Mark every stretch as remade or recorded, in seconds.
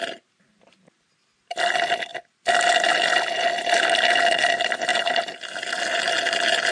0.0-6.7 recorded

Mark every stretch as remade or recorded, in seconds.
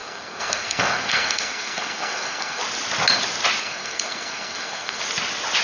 0.0-2.6 remade; 2.6-3.6 recorded; 3.6-5.0 remade; 5.0-5.6 recorded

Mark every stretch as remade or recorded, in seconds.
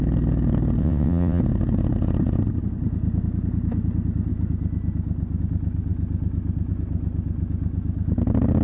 0.0-0.8 recorded; 0.8-1.4 remade; 1.4-8.6 recorded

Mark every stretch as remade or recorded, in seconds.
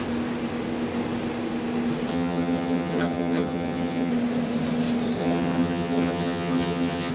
0.0-2.1 recorded; 2.1-4.1 remade; 4.1-5.2 recorded; 5.2-7.1 remade